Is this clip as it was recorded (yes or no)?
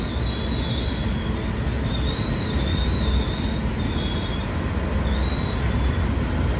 yes